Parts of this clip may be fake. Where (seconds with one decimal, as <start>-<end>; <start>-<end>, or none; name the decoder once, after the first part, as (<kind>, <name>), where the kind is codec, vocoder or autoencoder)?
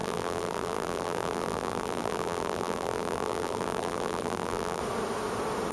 0.0-4.8 (vocoder, BigVGAN v2)